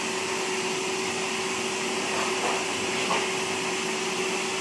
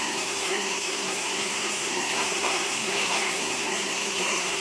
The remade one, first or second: second